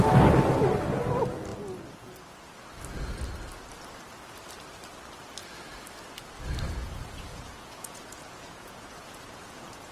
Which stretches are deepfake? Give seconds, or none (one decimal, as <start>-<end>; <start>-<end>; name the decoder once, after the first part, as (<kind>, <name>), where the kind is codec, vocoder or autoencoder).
7.3-9.9 (vocoder, Vocos)